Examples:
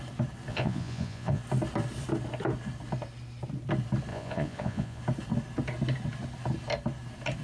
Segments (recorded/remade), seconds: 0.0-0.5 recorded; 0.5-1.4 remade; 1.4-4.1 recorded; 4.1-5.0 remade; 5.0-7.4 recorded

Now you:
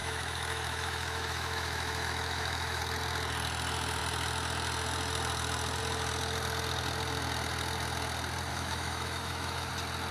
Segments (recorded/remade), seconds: 0.0-2.8 remade; 2.8-8.5 recorded; 8.5-9.7 remade; 9.7-10.1 recorded

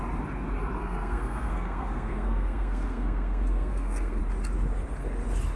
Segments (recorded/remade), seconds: 0.0-0.8 recorded; 0.8-4.2 remade; 4.2-5.6 recorded

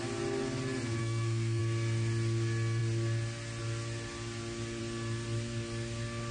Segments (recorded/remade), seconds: 0.0-1.0 recorded; 1.0-1.6 remade; 1.6-6.3 recorded

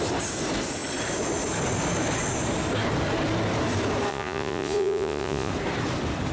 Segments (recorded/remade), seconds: 0.0-4.1 recorded; 4.1-5.5 remade; 5.5-6.3 recorded

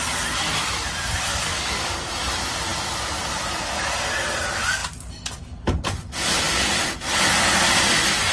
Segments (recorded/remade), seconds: 0.0-1.3 recorded; 1.3-2.1 remade; 2.1-8.3 recorded

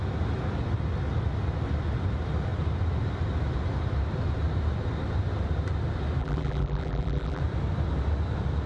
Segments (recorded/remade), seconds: 0.0-6.2 recorded; 6.2-7.4 remade; 7.4-8.7 recorded